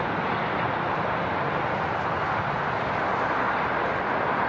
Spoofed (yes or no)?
no